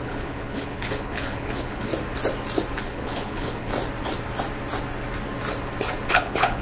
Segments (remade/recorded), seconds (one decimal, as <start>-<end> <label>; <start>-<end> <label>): 0.0-1.9 remade; 1.9-2.8 recorded; 2.8-3.7 remade; 3.7-6.1 recorded; 6.1-6.6 remade